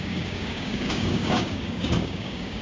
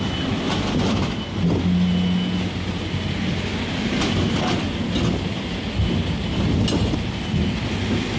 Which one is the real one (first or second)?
second